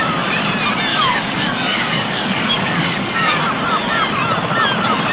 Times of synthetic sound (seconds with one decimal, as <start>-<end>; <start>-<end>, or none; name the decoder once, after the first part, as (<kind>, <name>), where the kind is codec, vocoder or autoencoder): 0.9-3.4 (codec, DAC)